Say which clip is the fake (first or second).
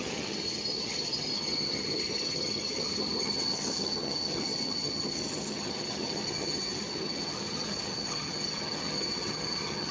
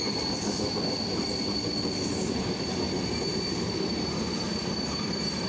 first